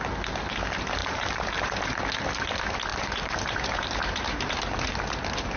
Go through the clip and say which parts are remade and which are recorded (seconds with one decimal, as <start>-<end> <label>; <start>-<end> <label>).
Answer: 0.0-1.0 recorded; 1.0-1.8 remade; 1.8-2.9 recorded; 2.9-4.6 remade; 4.6-5.6 recorded